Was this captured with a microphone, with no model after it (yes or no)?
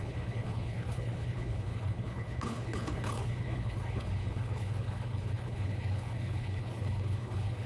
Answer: no